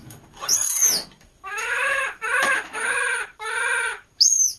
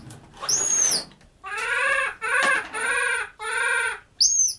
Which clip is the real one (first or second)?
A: second